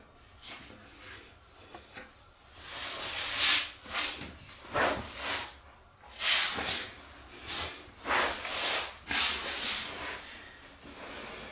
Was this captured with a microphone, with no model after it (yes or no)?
yes